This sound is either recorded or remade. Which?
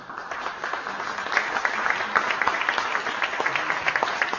recorded